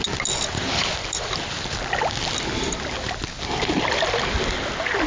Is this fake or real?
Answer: real